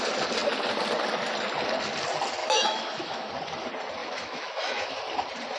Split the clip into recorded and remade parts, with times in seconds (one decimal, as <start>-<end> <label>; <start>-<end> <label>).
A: 0.0-2.4 recorded; 2.4-3.3 remade; 3.3-4.0 recorded; 4.0-5.0 remade; 5.0-5.6 recorded